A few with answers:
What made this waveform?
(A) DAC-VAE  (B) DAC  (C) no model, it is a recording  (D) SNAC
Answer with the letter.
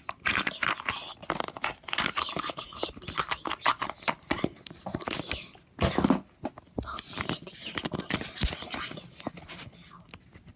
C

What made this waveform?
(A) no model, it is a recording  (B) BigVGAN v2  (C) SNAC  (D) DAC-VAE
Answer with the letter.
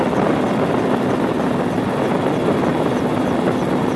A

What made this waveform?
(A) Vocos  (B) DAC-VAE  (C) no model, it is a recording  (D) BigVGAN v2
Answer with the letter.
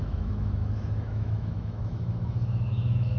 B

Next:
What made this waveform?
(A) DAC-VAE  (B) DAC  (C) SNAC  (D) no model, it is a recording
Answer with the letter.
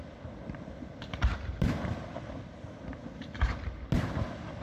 D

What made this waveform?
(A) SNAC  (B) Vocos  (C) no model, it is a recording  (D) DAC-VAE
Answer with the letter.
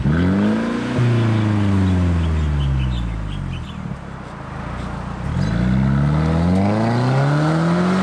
C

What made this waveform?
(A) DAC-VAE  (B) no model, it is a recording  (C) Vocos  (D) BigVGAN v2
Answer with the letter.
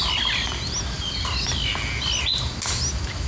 B